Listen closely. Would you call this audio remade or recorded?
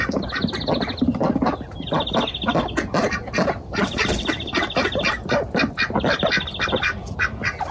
recorded